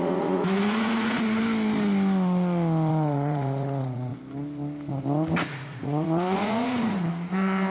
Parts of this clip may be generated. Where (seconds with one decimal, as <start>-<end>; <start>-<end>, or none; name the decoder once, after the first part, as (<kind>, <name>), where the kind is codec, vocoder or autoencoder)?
0.0-1.4 (vocoder, Vocos); 2.9-4.1; 5.3-7.7